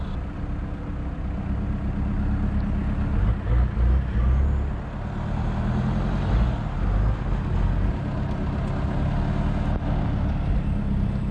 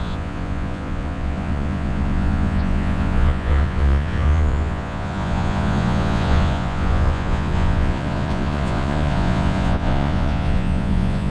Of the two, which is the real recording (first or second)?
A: first